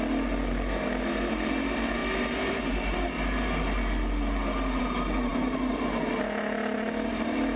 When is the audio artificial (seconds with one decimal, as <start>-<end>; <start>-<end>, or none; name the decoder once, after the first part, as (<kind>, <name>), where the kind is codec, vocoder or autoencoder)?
none